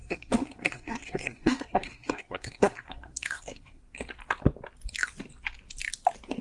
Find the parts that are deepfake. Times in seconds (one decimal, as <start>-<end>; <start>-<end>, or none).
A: 0.0-3.8